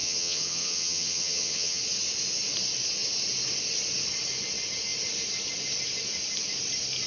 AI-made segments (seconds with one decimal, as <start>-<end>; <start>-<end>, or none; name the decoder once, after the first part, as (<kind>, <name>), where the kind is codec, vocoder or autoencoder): 0.0-1.8 (vocoder, HiFi-GAN)